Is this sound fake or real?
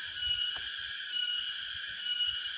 real